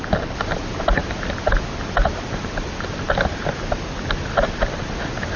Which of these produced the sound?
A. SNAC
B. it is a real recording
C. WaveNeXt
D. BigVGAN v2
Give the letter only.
B